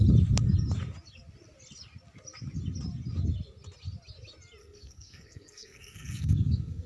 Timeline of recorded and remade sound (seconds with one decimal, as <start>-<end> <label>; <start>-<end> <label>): 0.0-4.6 recorded; 4.6-6.9 remade